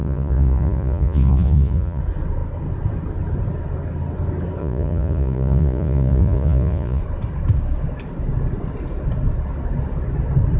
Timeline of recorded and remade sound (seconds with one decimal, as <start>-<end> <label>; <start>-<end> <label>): 0.0-2.0 remade; 2.0-4.6 recorded; 4.6-7.0 remade; 7.0-10.6 recorded